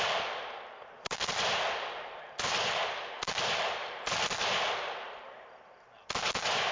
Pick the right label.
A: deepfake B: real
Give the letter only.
B